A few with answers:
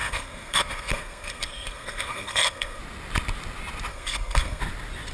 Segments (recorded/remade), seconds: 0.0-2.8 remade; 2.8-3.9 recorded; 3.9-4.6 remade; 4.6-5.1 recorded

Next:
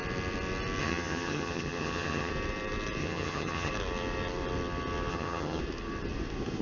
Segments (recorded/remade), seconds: 0.0-0.8 recorded; 0.8-2.3 remade; 2.3-3.0 recorded; 3.0-3.7 remade; 3.7-5.1 recorded; 5.1-5.6 remade; 5.6-6.6 recorded

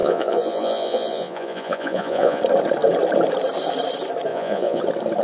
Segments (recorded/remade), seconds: 0.0-2.4 remade; 2.4-4.3 recorded; 4.3-4.8 remade; 4.8-5.2 recorded